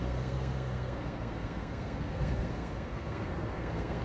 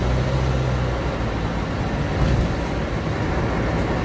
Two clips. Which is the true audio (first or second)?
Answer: second